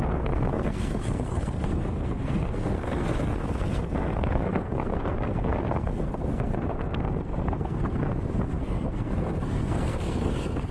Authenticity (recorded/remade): remade